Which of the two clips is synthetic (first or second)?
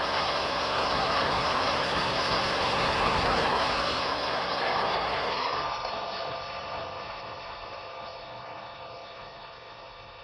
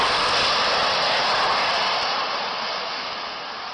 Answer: first